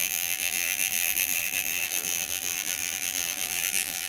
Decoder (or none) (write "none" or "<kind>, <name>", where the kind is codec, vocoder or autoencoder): vocoder, BigVGAN v2